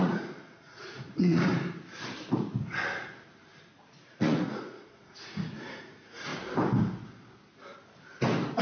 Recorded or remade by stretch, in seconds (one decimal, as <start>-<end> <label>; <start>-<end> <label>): 0.0-1.5 remade; 1.5-3.9 recorded; 3.9-6.3 remade; 6.3-8.6 recorded

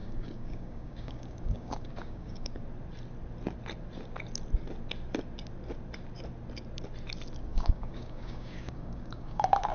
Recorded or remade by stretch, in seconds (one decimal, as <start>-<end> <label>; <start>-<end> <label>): 0.0-2.6 remade; 2.6-7.5 recorded; 7.5-9.7 remade

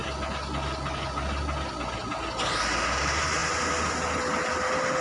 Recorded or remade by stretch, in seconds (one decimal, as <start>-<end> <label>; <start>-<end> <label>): 0.0-5.0 recorded

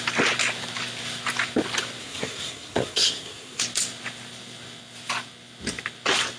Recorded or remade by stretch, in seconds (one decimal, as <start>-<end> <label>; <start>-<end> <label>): 0.0-2.0 recorded; 2.0-3.6 remade; 3.6-6.4 recorded

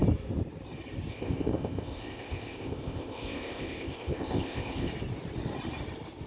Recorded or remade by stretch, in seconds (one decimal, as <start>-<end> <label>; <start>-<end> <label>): 0.0-1.1 recorded; 1.1-4.9 remade; 4.9-6.3 recorded

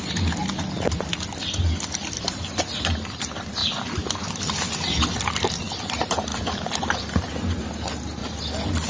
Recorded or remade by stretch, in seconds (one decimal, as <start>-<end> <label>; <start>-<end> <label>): 0.0-3.6 remade; 3.6-4.5 recorded; 4.5-6.3 remade; 6.3-7.6 recorded; 7.6-8.9 remade

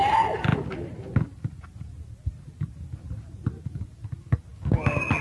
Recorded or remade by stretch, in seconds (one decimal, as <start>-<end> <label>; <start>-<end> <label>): 0.0-5.2 recorded

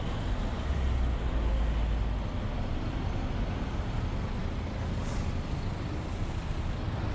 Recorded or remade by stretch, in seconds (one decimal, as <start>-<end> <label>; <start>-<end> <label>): 0.0-7.1 recorded